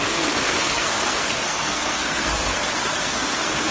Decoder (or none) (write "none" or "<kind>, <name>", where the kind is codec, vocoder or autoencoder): codec, SNAC